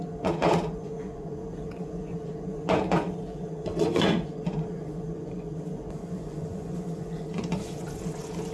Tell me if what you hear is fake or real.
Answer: fake